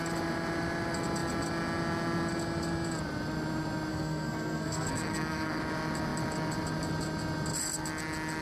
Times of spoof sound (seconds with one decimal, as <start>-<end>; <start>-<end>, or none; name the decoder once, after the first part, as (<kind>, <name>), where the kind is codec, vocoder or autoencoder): 3.9-5.6 (codec, SNAC)